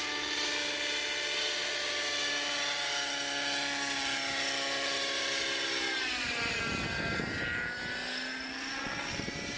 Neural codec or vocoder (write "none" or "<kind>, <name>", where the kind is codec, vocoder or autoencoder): none